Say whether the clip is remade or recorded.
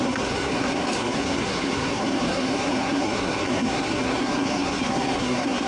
remade